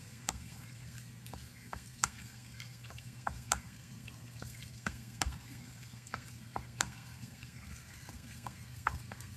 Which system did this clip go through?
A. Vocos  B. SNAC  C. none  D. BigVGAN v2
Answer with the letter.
B